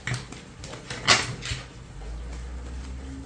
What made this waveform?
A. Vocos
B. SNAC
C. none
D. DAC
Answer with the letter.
C